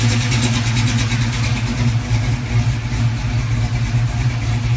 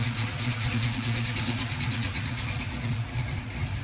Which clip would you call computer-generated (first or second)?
second